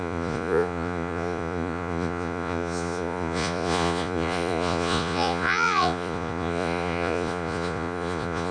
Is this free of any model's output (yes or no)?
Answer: no